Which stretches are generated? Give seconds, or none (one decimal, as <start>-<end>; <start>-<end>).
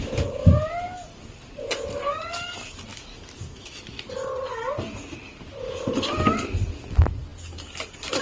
2.9-3.8